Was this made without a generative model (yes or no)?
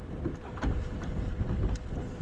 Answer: yes